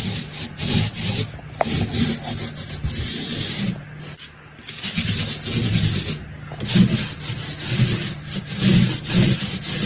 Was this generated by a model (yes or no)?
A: no